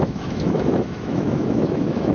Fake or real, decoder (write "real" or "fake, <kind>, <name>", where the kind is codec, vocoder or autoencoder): fake, autoencoder, DAC-VAE